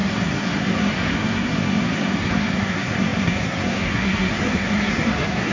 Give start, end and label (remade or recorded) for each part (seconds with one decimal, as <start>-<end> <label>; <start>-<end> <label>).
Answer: 0.0-5.5 remade